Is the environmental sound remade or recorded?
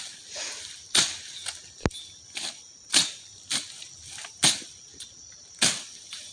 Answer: recorded